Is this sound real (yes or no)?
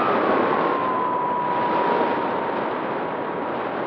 yes